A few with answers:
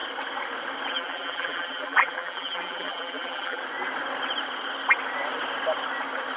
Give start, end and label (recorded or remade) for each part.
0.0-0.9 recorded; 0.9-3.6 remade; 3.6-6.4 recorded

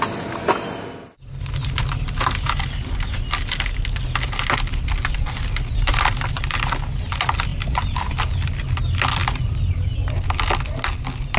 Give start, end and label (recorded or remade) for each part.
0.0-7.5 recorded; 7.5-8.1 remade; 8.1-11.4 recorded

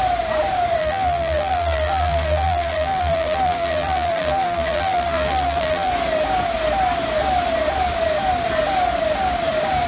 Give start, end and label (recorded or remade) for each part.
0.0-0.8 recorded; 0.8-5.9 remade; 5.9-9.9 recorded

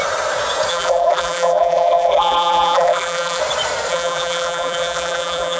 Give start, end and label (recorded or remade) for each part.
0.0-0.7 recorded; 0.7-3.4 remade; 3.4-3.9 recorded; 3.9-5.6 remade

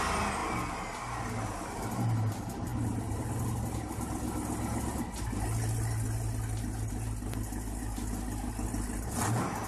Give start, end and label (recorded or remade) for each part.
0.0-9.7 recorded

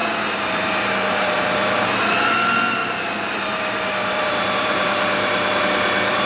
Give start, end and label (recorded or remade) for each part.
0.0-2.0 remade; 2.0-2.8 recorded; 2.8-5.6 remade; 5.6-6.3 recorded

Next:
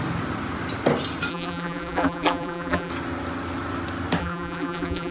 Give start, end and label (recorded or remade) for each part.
0.0-1.3 recorded; 1.3-2.9 remade; 2.9-4.2 recorded; 4.2-5.1 remade

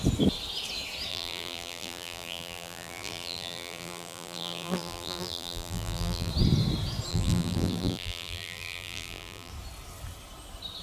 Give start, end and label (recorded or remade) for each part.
0.0-1.1 recorded; 1.1-6.3 remade; 6.3-7.1 recorded; 7.1-9.5 remade; 9.5-10.8 recorded